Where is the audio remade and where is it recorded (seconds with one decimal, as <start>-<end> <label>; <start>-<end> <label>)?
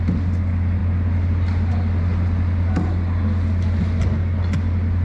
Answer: 0.0-5.0 recorded